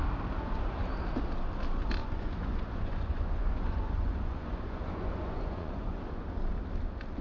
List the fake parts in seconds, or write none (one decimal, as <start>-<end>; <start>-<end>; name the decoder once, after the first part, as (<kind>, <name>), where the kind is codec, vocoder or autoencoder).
2.0-6.3 (vocoder, Vocos)